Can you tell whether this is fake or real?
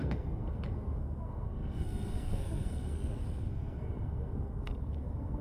fake